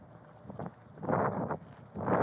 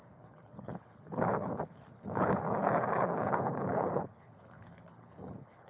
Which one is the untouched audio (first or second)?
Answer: first